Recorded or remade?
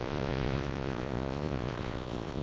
remade